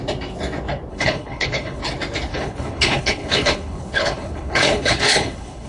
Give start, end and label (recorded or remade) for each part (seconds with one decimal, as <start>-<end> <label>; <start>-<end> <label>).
0.0-0.9 recorded; 0.9-1.8 remade; 1.8-2.3 recorded; 2.3-5.7 remade